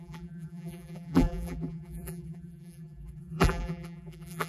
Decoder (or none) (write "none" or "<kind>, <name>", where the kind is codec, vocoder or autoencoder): vocoder, BigVGAN v2